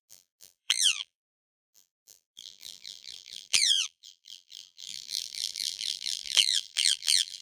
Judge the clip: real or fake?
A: fake